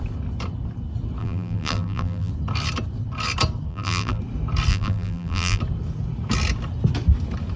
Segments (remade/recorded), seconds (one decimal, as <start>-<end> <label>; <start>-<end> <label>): 0.0-1.2 recorded; 1.2-2.3 remade; 2.3-3.7 recorded; 3.7-4.2 remade; 4.2-4.7 recorded; 4.7-5.6 remade; 5.6-7.6 recorded